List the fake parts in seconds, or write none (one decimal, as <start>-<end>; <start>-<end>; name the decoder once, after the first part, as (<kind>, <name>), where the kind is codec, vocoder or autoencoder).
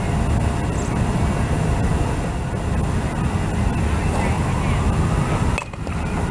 none